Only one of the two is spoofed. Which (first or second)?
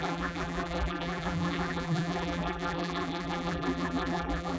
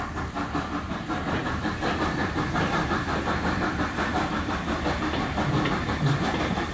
first